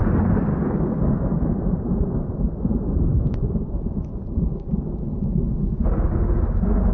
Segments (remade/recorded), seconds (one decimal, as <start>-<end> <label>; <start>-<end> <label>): 0.0-0.5 recorded; 0.5-1.6 remade; 1.6-6.9 recorded